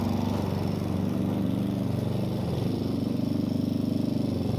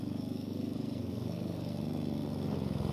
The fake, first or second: second